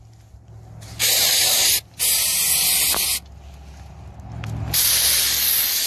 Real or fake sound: real